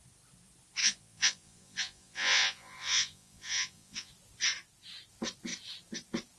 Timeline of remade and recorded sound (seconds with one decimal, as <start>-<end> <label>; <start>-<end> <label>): 0.0-0.8 recorded; 0.8-4.1 remade; 4.1-6.4 recorded